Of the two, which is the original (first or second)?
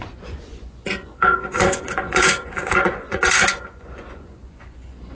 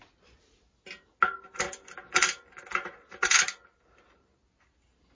second